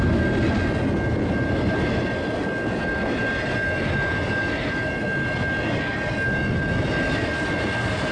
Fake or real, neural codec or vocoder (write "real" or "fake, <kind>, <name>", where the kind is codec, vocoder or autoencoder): real